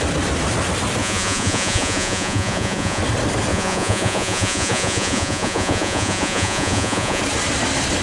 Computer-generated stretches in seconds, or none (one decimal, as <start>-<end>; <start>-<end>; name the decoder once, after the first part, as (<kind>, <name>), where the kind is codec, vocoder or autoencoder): 1.0-3.0 (vocoder, Vocos); 3.5-7.2